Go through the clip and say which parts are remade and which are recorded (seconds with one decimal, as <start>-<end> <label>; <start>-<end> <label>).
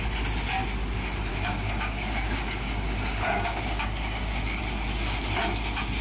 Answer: 0.0-1.3 recorded; 1.3-4.6 remade; 4.6-6.0 recorded